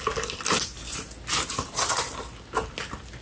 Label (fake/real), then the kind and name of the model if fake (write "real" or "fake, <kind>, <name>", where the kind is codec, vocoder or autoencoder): real